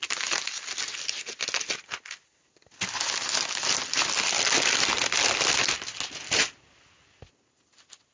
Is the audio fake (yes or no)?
no